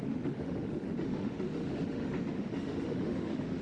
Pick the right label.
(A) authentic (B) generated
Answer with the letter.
B